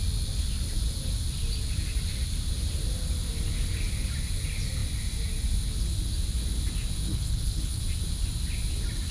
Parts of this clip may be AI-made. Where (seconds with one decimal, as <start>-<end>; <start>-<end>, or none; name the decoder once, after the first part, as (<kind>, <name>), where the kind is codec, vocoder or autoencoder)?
7.0-7.8 (codec, HILCodec)